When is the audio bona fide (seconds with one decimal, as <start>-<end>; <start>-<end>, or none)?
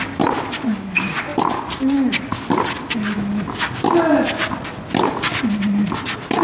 0.0-6.4